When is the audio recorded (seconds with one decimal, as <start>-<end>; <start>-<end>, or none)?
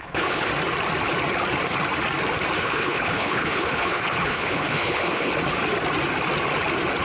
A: 0.5-2.6; 5.3-7.0